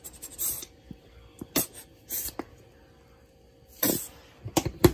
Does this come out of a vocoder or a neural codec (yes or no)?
no